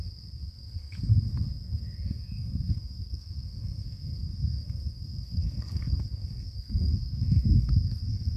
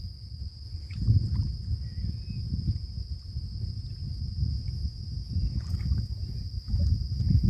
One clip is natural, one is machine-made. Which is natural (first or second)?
second